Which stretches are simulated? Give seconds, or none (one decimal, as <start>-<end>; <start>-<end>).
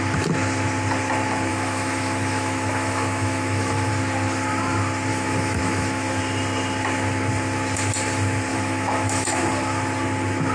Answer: 1.5-3.9; 5.1-6.2; 8.5-9.4